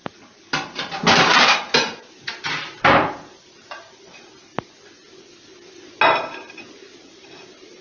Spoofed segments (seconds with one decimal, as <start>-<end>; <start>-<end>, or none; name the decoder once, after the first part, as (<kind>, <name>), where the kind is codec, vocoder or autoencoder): 0.0-4.5 (vocoder, BigVGAN v2); 6.5-7.8